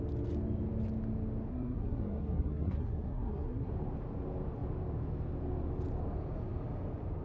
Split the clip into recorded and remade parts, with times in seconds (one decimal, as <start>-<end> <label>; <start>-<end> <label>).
0.0-1.5 recorded; 1.5-3.7 remade; 3.7-7.2 recorded